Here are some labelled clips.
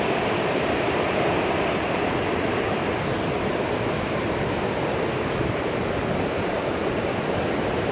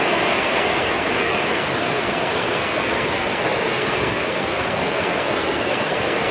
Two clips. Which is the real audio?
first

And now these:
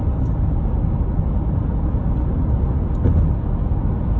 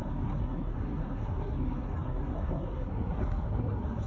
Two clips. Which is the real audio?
first